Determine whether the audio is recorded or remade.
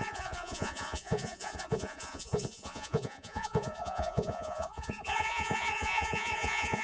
remade